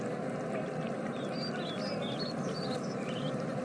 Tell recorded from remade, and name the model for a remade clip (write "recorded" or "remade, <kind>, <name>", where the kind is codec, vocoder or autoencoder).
recorded